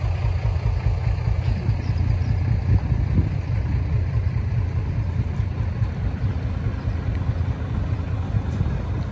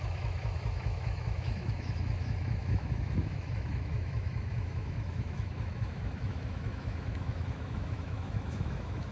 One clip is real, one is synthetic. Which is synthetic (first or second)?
second